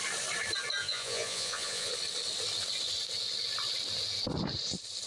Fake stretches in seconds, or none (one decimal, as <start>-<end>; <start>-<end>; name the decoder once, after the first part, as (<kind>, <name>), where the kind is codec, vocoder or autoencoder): 0.8-1.9 (vocoder, Vocos)